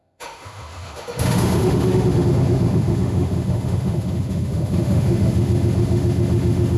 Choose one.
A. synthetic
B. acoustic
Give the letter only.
A